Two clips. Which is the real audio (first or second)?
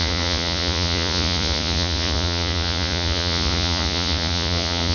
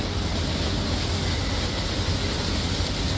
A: second